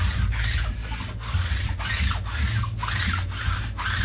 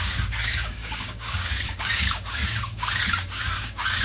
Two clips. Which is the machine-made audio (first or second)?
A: second